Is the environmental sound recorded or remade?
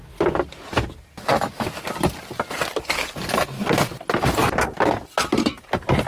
recorded